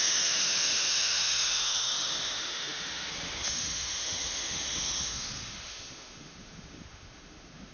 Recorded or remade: remade